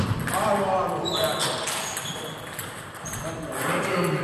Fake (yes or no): no